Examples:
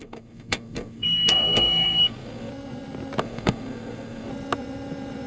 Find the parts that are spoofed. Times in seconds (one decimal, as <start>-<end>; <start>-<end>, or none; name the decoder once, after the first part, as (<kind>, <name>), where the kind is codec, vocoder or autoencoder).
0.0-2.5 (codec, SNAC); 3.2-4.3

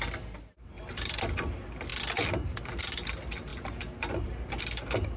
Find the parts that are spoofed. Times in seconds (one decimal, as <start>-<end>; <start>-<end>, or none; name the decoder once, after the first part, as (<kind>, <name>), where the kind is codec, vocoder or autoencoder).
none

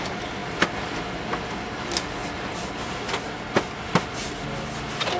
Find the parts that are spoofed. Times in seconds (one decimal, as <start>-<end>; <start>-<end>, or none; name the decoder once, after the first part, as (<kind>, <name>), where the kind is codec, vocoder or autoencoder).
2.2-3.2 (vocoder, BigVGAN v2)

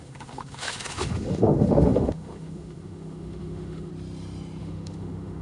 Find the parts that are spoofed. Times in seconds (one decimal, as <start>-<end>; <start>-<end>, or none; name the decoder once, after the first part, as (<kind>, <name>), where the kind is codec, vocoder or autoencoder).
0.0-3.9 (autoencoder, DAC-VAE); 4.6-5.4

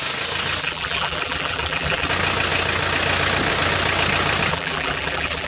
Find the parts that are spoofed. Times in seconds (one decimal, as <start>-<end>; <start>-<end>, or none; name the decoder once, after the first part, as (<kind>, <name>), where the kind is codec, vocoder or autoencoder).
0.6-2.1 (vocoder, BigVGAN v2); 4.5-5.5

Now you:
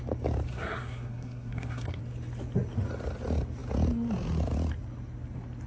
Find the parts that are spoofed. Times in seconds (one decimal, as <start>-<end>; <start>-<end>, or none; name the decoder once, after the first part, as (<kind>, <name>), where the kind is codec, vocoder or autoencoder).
0.5-2.0 (codec, SNAC)

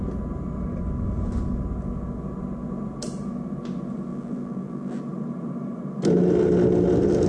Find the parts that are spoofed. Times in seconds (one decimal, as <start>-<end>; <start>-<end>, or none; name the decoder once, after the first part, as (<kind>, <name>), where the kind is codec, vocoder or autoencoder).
4.1-5.0 (vocoder, BigVGAN v2)

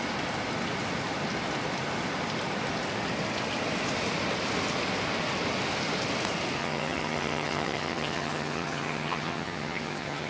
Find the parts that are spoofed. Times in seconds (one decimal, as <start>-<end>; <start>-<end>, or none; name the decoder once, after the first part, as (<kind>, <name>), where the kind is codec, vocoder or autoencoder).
6.6-10.3 (vocoder, HiFi-GAN)